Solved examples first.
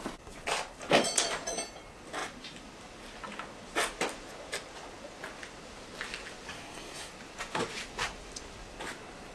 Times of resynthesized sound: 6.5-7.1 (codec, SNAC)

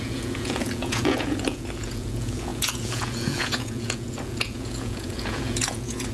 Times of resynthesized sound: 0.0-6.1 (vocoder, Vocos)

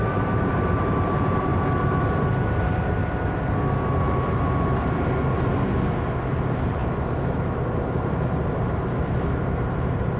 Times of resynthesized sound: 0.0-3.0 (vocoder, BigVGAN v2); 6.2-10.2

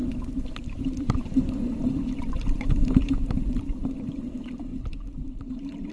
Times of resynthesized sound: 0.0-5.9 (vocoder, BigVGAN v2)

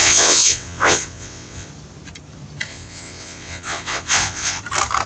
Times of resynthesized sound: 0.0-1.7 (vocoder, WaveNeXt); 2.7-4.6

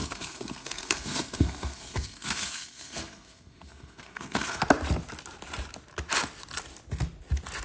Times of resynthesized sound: 0.0-4.6 (codec, SNAC)